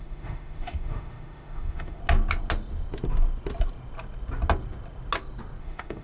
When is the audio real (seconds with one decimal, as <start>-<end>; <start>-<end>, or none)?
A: 2.0-5.6